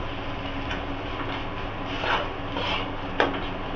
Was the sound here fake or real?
real